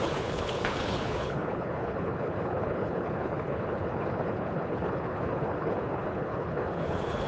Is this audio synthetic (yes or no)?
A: yes